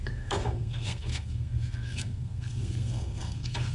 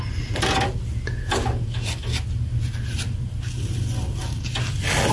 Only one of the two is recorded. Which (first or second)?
second